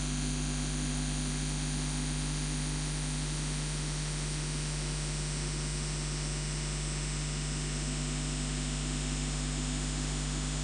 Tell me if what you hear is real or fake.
fake